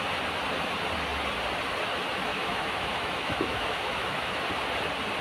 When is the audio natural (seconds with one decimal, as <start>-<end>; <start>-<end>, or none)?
0.0-2.3; 4.4-5.2